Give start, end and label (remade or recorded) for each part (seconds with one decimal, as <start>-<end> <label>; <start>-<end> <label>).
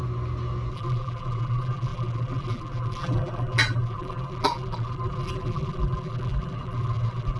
0.0-0.7 recorded; 0.7-7.4 remade